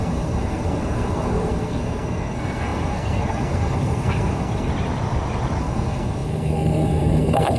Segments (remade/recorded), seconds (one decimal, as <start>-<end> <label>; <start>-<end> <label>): 0.0-4.7 remade; 4.7-5.6 recorded; 5.6-7.6 remade